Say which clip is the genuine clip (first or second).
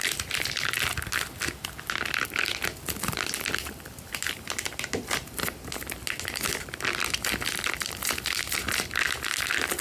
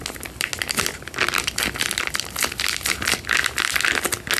second